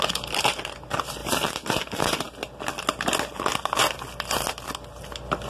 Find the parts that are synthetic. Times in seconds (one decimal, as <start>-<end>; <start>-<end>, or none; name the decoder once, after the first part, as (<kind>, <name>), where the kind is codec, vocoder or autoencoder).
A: none